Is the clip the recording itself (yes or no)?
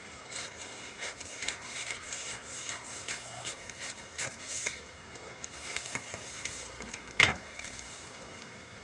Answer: no